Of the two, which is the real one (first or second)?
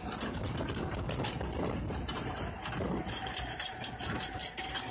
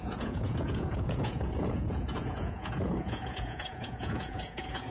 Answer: first